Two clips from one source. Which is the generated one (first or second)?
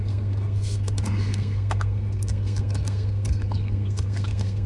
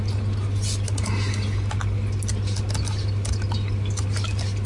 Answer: first